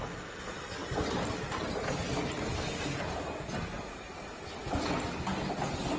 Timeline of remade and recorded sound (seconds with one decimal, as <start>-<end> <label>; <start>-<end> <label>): 0.0-6.0 recorded